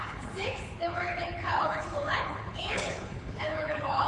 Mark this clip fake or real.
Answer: fake